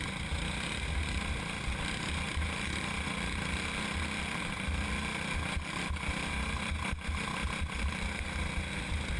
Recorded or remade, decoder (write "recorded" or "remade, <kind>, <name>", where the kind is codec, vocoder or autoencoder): recorded